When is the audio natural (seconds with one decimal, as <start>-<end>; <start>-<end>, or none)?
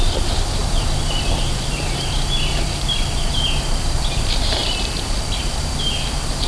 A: 0.6-1.2